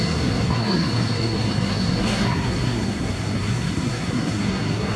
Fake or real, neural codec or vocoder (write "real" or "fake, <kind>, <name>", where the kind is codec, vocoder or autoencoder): fake, codec, SNAC